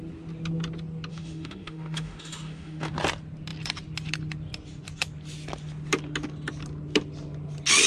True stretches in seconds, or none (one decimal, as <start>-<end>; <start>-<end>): 0.0-1.1; 2.9-7.9